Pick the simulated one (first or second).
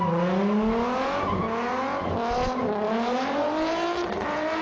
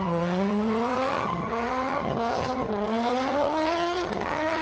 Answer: second